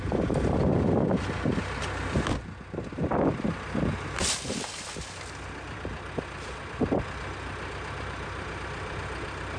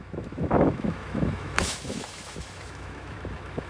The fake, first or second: second